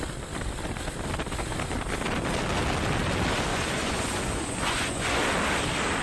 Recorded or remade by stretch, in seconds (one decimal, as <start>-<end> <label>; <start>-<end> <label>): 0.0-3.5 recorded; 3.5-5.2 remade; 5.2-6.0 recorded